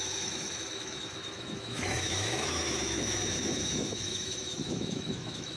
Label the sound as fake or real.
fake